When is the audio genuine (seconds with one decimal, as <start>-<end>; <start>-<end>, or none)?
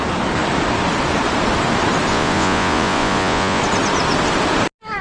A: 0.0-2.1; 3.6-5.0